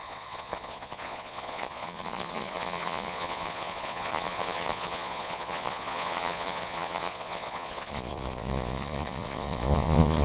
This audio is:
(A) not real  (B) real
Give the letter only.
A